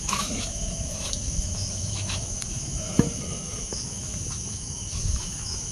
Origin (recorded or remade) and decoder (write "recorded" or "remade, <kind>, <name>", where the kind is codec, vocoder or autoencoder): remade, autoencoder, DAC-VAE